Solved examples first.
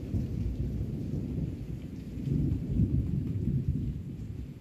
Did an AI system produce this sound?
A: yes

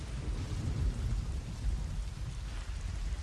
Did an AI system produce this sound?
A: no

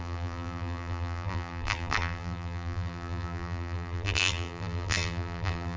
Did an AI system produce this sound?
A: yes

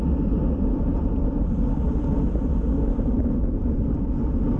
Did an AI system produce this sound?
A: no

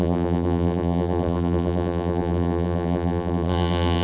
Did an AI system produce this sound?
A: yes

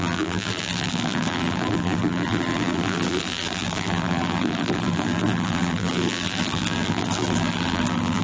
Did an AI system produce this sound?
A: yes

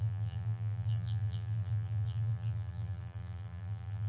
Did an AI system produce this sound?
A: yes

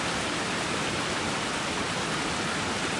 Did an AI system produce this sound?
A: yes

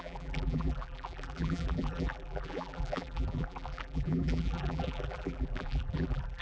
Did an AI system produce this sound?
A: yes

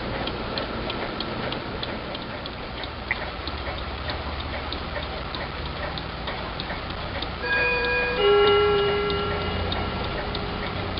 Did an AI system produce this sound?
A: yes